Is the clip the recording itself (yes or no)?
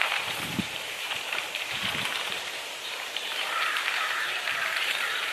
no